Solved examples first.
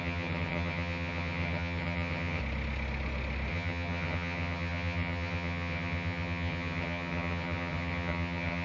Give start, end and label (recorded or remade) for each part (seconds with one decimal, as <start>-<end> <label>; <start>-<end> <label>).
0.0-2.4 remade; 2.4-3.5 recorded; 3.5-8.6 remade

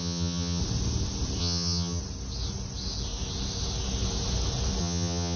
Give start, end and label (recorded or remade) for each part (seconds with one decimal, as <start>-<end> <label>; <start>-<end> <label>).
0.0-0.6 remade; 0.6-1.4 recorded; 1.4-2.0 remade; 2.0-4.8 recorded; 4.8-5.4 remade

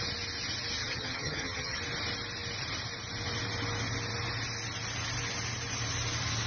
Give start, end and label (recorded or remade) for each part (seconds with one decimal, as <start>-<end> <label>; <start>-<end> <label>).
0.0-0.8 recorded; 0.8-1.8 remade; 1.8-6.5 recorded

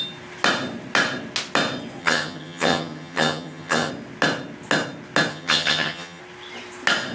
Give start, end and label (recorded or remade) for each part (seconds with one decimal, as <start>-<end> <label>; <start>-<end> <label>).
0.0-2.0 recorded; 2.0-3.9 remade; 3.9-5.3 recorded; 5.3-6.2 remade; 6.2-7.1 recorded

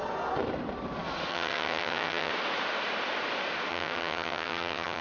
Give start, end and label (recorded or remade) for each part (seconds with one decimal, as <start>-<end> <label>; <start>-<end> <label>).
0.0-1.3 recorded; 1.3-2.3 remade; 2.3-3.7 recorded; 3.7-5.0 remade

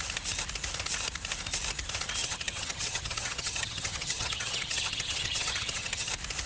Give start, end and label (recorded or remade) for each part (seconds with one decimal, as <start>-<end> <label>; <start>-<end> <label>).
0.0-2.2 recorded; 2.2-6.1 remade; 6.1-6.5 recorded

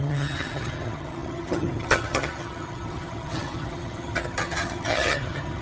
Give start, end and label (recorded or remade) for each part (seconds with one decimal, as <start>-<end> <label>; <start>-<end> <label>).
0.0-5.6 remade